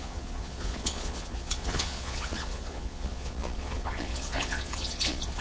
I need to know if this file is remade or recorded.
remade